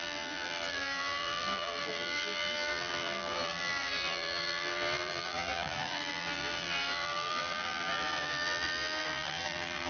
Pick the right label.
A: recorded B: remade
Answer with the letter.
B